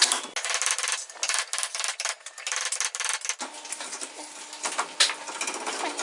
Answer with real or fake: real